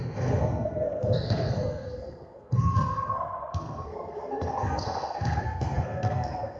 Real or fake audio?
fake